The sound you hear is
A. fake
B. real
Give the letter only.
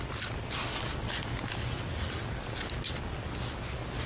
B